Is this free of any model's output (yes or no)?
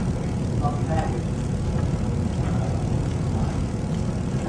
yes